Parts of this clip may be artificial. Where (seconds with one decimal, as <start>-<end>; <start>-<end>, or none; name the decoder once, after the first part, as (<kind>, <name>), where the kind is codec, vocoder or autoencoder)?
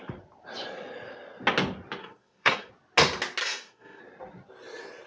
2.0-2.7 (codec, SNAC); 3.4-4.0